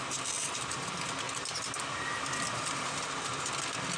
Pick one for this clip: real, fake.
real